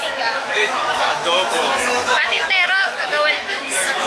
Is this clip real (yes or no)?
no